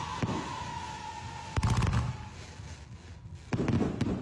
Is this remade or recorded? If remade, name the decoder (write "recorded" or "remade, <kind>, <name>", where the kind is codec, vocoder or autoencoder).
recorded